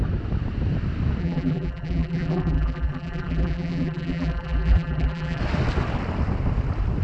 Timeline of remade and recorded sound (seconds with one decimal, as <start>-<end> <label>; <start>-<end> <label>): 0.0-1.2 recorded; 1.2-5.4 remade; 5.4-7.0 recorded